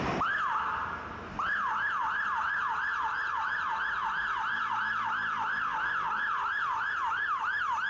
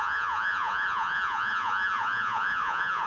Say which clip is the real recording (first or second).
first